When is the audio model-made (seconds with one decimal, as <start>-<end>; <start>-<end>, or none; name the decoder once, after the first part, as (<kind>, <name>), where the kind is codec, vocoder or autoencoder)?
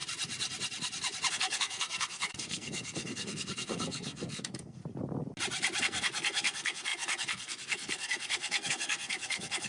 1.3-4.8 (codec, SNAC); 5.8-9.7